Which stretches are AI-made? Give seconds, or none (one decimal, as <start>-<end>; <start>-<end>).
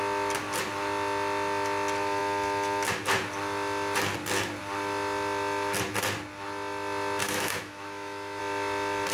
7.2-8.4